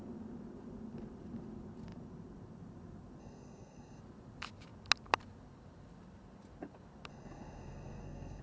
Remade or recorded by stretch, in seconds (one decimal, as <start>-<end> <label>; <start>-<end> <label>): 0.0-3.2 recorded; 3.2-4.0 remade; 4.0-7.1 recorded; 7.1-8.4 remade